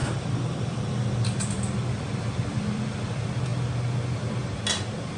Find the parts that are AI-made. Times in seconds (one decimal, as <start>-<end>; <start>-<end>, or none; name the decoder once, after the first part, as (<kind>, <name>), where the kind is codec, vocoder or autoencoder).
0.0-3.1 (vocoder, BigVGAN v2)